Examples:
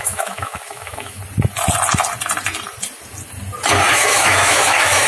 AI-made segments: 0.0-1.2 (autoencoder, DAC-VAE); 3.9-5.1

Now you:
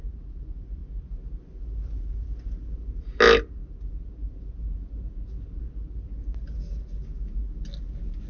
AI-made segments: none

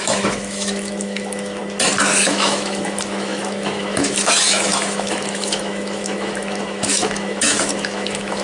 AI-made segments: 0.0-1.6 (autoencoder, DAC-VAE); 2.1-8.4

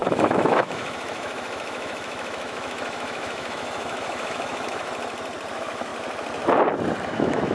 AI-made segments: 0.0-4.9 (autoencoder, DAC-VAE); 5.5-5.9; 7.1-7.5

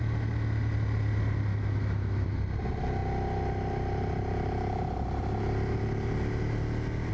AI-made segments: 1.5-2.4 (autoencoder, DAC-VAE)